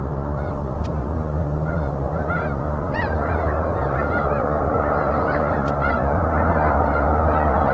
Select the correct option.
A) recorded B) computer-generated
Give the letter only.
B